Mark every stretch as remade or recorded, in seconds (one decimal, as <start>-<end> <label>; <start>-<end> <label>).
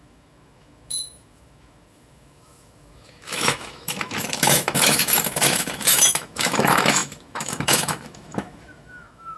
0.0-9.4 remade